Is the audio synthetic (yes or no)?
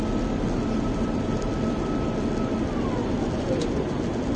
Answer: no